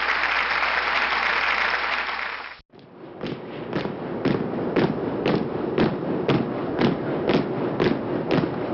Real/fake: real